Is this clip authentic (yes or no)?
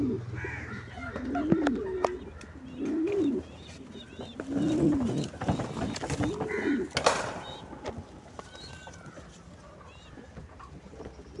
yes